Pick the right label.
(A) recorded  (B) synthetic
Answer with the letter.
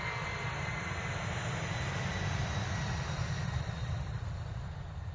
A